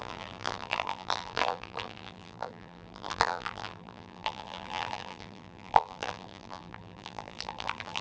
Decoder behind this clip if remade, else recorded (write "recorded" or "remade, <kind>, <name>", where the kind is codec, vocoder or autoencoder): remade, vocoder, BigVGAN v2